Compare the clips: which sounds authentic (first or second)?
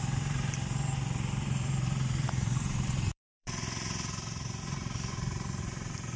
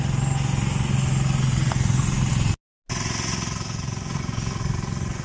second